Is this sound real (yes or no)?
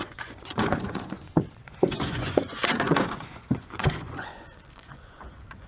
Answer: no